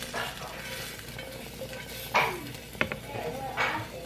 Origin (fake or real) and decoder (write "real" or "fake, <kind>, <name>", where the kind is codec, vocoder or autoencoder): real